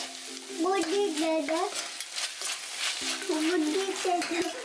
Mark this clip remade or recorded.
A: recorded